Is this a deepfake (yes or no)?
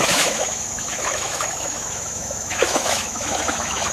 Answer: yes